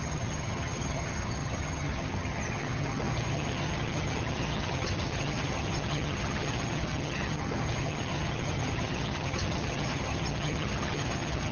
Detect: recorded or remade remade